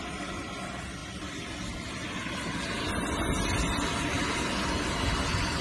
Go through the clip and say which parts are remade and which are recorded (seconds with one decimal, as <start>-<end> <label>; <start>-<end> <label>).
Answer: 0.0-5.6 recorded